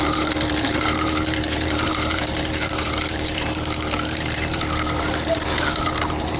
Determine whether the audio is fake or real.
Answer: fake